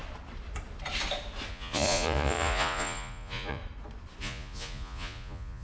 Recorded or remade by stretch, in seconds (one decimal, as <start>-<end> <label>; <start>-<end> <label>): 0.0-1.5 recorded; 1.5-3.6 remade; 3.6-4.2 recorded; 4.2-5.6 remade